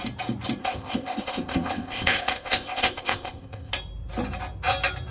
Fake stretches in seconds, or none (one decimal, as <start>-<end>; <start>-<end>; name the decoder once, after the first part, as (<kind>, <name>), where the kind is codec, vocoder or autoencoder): 0.6-3.7 (codec, ZipCodec)